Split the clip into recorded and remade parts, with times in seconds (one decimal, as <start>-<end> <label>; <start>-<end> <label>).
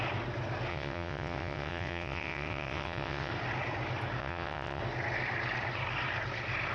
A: 0.0-0.7 recorded; 0.7-3.3 remade; 3.3-4.2 recorded; 4.2-4.8 remade; 4.8-6.7 recorded